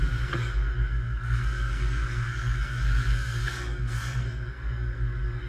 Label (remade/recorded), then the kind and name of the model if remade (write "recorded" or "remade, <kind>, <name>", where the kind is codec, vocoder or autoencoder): remade, codec, SNAC